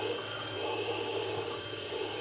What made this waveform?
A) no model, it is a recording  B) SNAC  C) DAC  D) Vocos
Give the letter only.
C